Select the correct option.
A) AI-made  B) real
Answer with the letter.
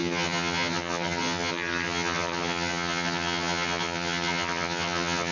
A